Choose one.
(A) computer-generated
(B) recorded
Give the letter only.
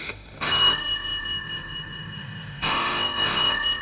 A